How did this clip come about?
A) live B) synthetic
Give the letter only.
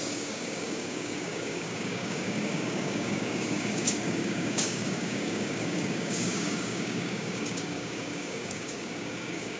B